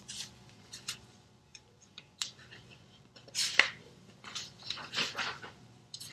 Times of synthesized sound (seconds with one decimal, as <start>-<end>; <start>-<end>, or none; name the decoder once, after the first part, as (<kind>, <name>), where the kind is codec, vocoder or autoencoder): 0.0-3.2 (vocoder, Vocos); 3.8-6.1